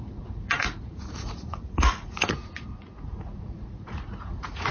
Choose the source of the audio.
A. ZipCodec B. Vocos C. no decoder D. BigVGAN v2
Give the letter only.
B